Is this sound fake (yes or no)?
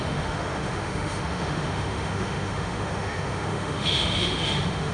yes